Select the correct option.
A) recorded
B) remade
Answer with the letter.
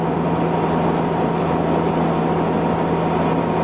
A